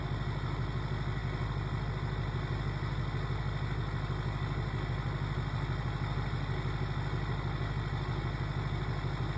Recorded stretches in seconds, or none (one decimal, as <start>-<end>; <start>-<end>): 0.0-9.4